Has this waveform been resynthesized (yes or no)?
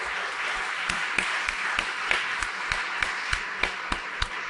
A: no